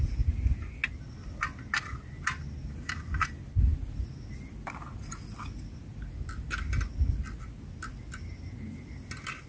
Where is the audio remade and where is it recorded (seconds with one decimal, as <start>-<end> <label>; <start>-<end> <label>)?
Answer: 0.0-9.5 recorded